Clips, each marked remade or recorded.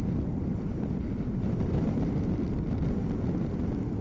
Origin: recorded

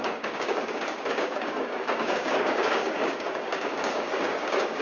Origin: remade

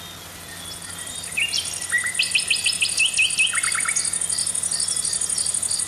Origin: recorded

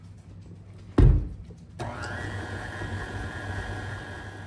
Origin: recorded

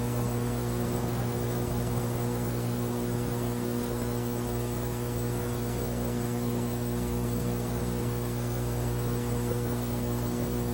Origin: remade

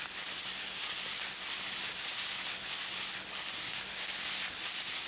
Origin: recorded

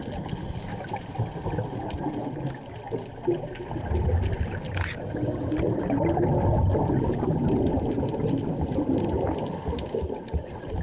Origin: recorded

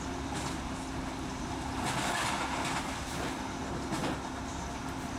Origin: recorded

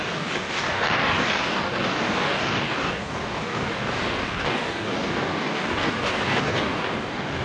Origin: remade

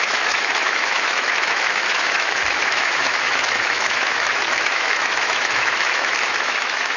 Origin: remade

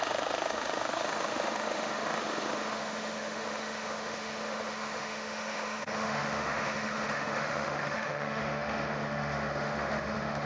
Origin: remade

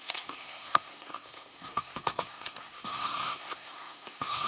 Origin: remade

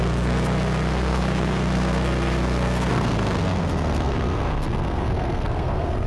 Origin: remade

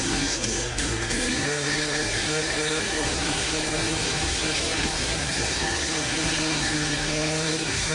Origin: remade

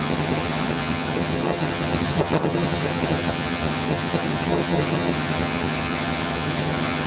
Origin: remade